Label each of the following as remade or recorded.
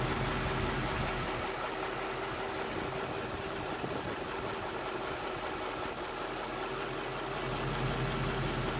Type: recorded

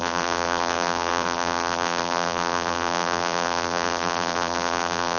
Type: remade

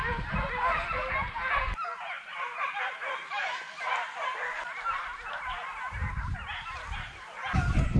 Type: recorded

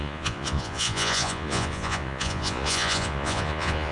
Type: remade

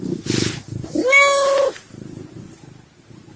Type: recorded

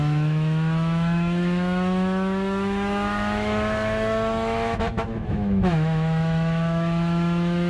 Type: remade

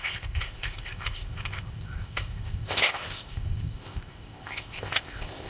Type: remade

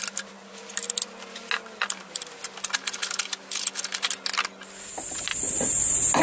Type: recorded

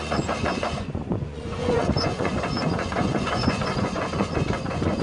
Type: remade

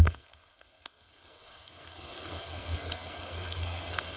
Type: remade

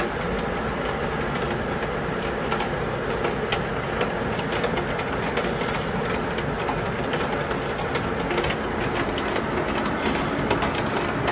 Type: recorded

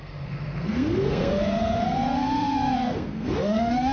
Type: remade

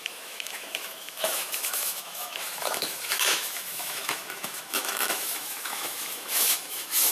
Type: remade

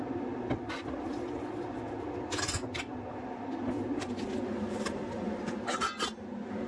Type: recorded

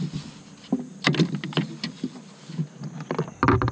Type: recorded